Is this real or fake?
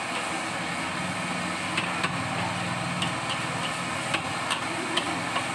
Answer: real